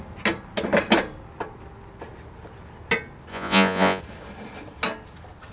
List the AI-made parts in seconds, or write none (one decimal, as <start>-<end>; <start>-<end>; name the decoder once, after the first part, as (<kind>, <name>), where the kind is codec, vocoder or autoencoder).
3.3-4.0 (vocoder, Vocos)